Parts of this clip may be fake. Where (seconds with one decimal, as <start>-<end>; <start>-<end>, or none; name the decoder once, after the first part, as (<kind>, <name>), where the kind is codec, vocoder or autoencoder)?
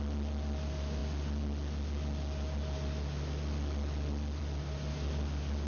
none